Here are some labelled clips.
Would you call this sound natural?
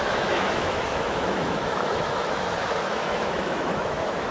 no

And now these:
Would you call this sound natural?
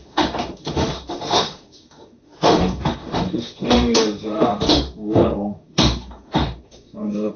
no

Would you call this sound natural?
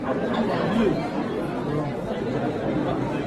yes